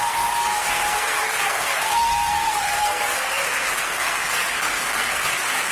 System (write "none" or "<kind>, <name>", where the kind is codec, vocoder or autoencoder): codec, SNAC